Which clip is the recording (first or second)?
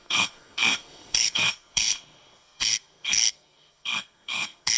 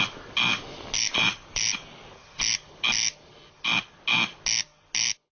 second